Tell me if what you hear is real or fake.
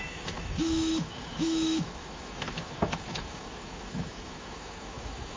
fake